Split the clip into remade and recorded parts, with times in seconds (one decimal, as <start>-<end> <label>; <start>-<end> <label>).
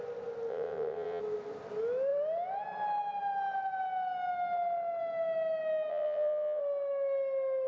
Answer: 0.0-0.5 recorded; 0.5-1.2 remade; 1.2-5.9 recorded; 5.9-6.6 remade; 6.6-7.7 recorded